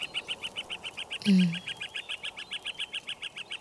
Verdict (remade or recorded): remade